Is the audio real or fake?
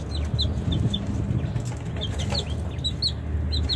real